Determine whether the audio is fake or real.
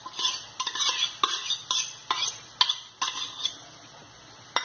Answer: real